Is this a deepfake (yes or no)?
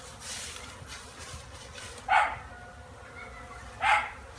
no